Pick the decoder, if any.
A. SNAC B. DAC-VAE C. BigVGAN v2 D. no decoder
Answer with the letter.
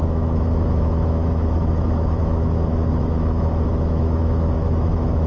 B